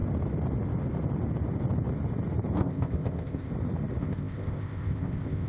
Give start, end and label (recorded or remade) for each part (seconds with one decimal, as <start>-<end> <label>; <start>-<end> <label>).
0.0-2.6 recorded; 2.6-3.5 remade; 3.5-4.0 recorded; 4.0-5.5 remade